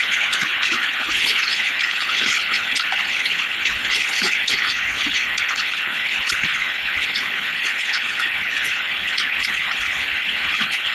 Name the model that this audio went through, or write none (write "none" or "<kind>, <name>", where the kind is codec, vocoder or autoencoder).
codec, HILCodec